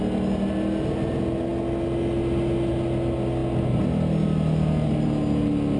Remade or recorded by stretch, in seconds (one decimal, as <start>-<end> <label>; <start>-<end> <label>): 0.0-5.8 recorded